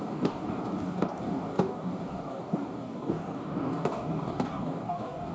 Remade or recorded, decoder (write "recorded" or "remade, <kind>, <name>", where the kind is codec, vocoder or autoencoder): remade, codec, DAC